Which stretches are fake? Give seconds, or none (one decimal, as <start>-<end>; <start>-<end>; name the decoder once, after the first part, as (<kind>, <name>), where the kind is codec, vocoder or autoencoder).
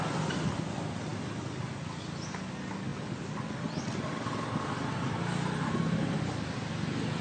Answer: none